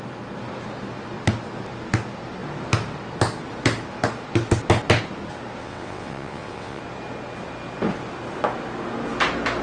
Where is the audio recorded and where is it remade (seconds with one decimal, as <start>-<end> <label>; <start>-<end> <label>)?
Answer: 0.0-5.6 recorded; 5.6-6.8 remade; 6.8-9.6 recorded

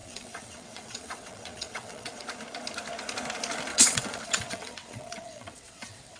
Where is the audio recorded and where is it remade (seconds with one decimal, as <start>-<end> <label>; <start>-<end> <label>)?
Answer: 0.0-2.2 remade; 2.2-3.7 recorded; 3.7-6.2 remade

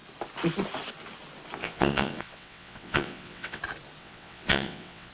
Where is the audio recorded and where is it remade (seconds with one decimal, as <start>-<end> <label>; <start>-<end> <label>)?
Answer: 0.0-1.6 recorded; 1.6-3.6 remade; 3.6-4.0 recorded; 4.0-5.1 remade

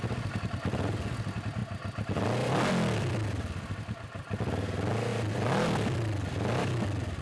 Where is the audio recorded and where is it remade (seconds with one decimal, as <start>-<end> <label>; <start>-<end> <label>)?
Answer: 0.0-7.2 recorded

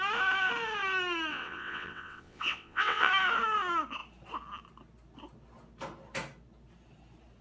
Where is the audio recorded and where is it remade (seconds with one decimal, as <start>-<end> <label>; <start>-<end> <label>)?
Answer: 0.0-1.3 recorded; 1.3-3.1 remade; 3.1-7.4 recorded

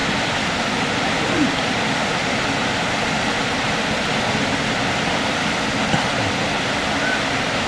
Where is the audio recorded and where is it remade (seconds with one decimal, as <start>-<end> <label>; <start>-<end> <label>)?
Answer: 0.0-7.7 recorded

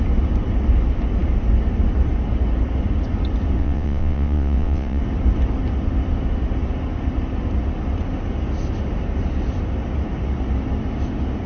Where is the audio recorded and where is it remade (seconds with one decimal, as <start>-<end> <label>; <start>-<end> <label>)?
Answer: 0.0-3.6 recorded; 3.6-5.0 remade; 5.0-11.5 recorded